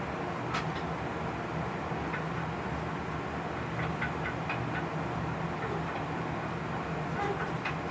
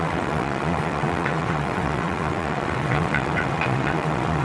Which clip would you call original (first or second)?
first